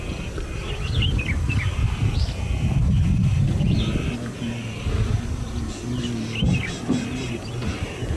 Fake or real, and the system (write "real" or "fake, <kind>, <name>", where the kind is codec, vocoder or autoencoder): real